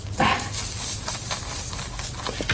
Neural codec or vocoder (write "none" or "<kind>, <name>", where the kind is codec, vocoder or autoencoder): none